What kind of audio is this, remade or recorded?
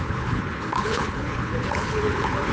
remade